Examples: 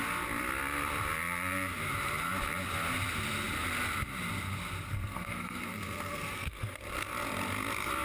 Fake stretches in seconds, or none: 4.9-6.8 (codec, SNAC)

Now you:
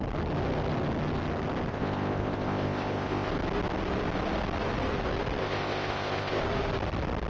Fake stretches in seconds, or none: 1.7-3.3 (codec, ZipCodec); 5.4-6.4

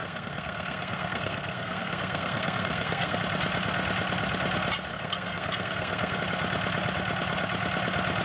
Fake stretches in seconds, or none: 0.0-3.2 (codec, SNAC); 4.9-6.2

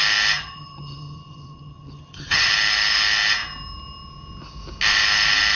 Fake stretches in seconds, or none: 0.4-2.5 (vocoder, HiFi-GAN)

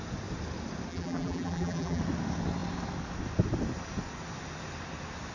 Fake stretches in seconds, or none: 0.9-2.0 (vocoder, BigVGAN v2)

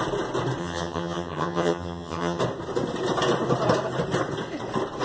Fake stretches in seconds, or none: 0.6-2.4 (vocoder, HiFi-GAN)

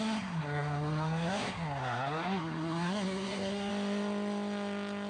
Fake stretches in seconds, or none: 0.0-3.7 (codec, SNAC)